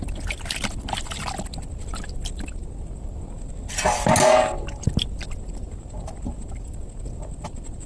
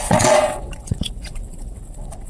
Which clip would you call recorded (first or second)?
first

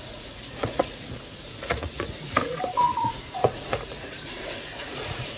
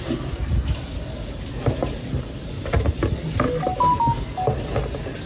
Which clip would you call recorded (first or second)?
second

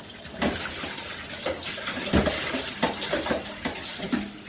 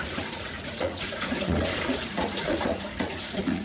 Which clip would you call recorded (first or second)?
first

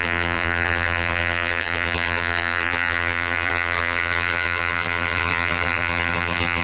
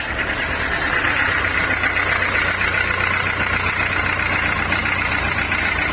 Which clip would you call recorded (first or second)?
second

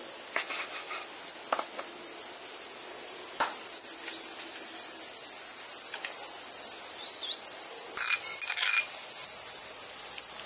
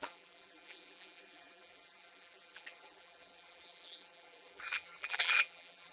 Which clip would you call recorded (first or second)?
first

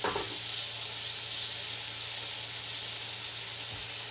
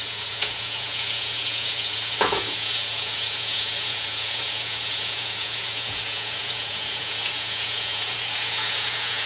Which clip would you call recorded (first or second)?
first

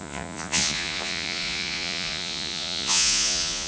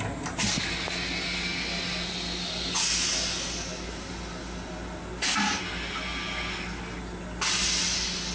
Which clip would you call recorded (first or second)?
second